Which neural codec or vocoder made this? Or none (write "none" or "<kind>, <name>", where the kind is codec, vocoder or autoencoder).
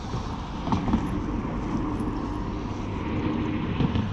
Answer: none